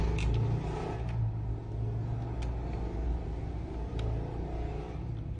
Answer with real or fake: real